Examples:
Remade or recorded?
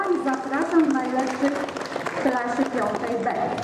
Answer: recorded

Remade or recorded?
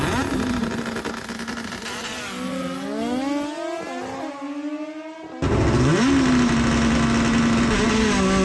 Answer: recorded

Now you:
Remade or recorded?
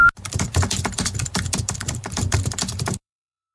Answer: remade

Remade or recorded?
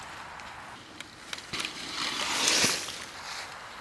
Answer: recorded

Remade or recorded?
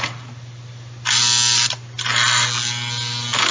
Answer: recorded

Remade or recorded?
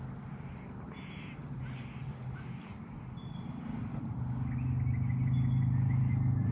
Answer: recorded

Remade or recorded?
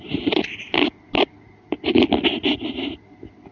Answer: recorded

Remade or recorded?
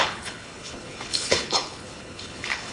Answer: remade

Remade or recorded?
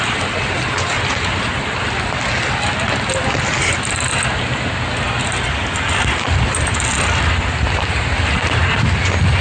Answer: recorded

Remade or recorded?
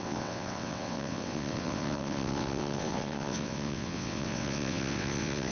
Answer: remade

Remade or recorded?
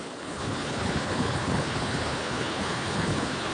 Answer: remade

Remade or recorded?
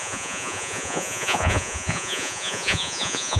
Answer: remade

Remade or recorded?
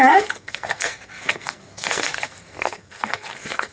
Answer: remade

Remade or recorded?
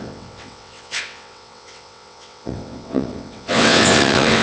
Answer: remade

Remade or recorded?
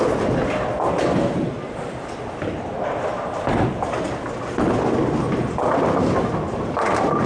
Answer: recorded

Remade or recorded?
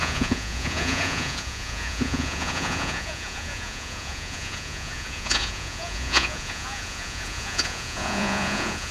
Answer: remade